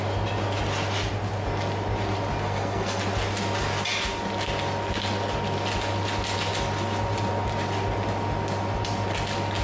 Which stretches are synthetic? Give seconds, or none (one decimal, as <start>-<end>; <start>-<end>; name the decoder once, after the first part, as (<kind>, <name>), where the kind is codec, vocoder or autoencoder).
2.4-3.0 (codec, SNAC)